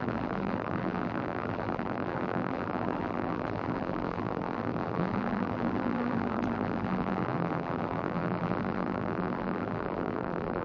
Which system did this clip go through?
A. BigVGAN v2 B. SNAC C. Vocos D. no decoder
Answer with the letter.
A